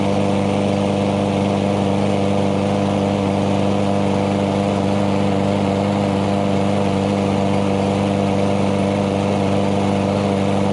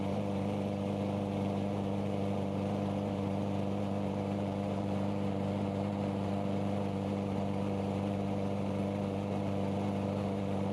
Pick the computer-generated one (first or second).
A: second